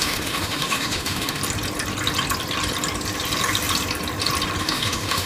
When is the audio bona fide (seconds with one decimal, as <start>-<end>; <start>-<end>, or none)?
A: 1.4-4.6